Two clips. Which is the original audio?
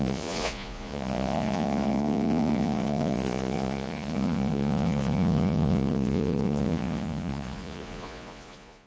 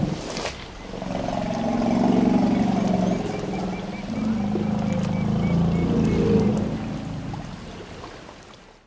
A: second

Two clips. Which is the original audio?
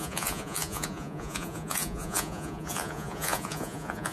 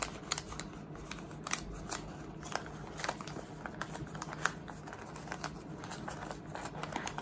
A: second